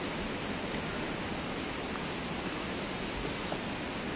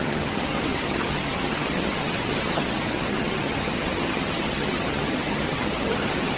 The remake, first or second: second